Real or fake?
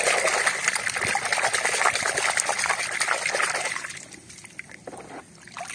real